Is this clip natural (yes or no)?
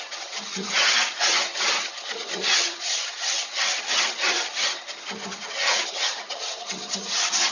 no